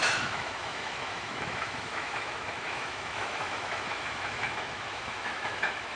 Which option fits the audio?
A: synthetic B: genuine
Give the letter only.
A